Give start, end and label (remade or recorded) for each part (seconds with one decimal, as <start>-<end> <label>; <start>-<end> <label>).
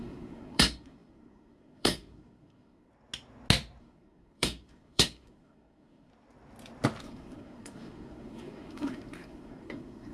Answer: 0.0-2.9 remade; 2.9-3.8 recorded; 3.8-6.1 remade; 6.1-7.0 recorded; 7.0-10.1 remade